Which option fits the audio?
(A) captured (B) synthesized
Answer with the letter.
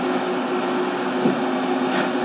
A